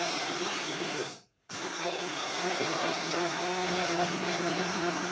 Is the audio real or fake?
fake